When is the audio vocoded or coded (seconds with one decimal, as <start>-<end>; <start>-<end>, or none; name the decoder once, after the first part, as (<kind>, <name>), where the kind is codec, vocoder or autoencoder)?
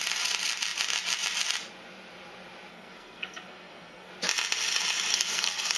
2.7-4.1 (codec, SNAC); 5.1-5.8